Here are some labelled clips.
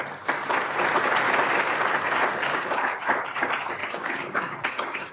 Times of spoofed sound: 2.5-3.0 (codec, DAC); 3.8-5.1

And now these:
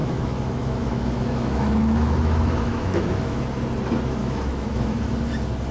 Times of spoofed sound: 0.0-3.4 (autoencoder, DAC-VAE); 4.2-5.1

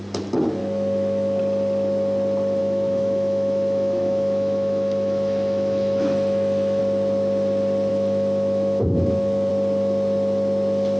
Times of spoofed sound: 0.6-1.4 (autoencoder, DAC-VAE); 2.6-6.8; 7.9-9.5

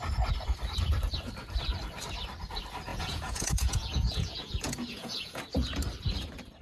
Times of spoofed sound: 2.9-5.4 (vocoder, Vocos)

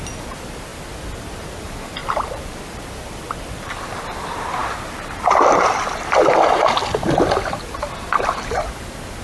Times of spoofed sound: none

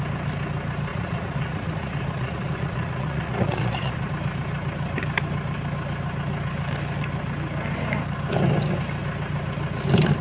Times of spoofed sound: 0.9-4.1 (vocoder, Vocos)